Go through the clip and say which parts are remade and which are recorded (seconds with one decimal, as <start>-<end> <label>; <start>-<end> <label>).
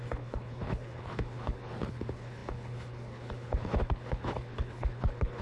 0.0-5.4 remade